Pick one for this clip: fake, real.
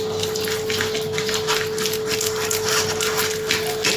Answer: real